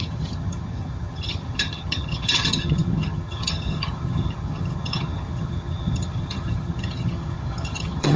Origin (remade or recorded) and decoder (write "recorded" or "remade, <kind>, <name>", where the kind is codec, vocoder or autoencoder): remade, vocoder, HiFi-GAN